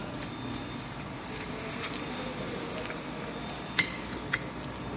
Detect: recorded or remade recorded